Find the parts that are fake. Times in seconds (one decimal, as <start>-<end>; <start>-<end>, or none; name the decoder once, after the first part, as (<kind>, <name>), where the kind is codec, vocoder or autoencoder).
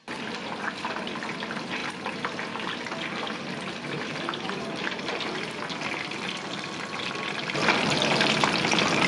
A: none